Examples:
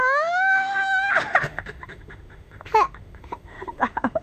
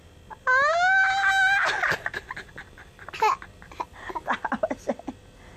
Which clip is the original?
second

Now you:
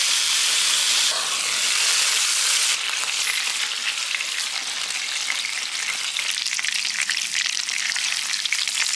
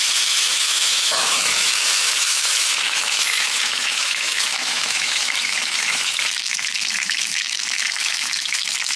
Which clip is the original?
first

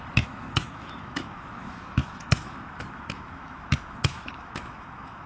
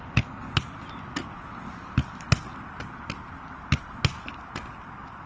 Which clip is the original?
second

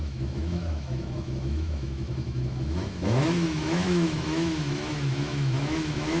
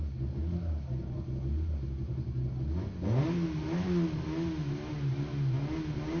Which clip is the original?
second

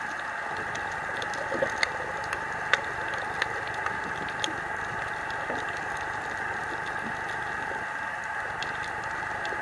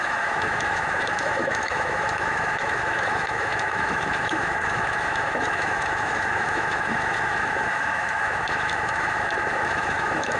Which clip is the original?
first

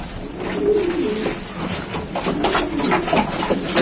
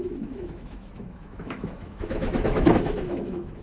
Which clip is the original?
first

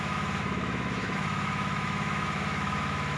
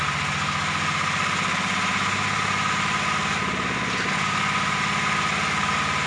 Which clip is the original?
second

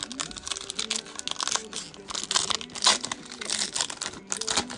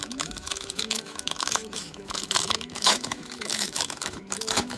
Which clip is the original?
first